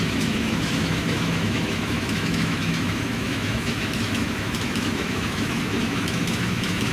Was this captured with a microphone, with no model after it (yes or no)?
no